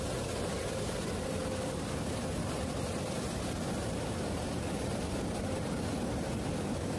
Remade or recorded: recorded